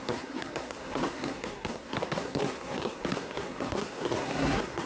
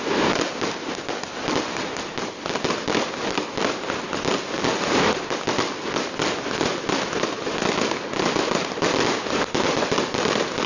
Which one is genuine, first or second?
second